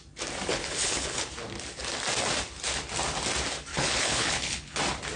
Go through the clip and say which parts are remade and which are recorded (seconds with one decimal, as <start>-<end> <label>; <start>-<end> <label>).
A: 0.0-0.5 recorded; 0.5-1.3 remade; 1.3-3.7 recorded; 3.7-4.8 remade; 4.8-5.2 recorded